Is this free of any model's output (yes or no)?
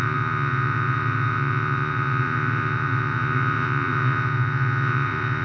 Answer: no